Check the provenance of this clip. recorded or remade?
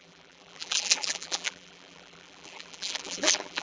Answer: remade